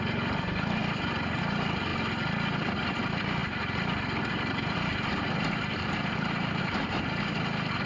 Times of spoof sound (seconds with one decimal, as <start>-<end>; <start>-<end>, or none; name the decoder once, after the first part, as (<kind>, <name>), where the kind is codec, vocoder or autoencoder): 0.0-0.8 (vocoder, BigVGAN v2); 1.4-1.9; 2.9-7.9

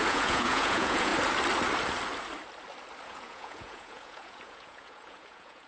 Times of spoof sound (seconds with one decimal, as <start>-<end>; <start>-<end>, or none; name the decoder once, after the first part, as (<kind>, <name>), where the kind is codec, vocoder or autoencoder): 0.0-1.1 (vocoder, Vocos); 3.0-5.7

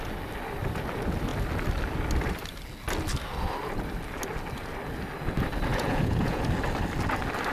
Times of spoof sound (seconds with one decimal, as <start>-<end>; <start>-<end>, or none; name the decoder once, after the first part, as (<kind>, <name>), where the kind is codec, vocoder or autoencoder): 5.7-6.4 (vocoder, Vocos)